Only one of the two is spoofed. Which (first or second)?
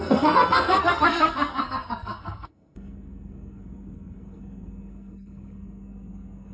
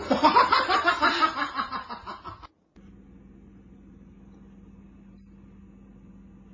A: first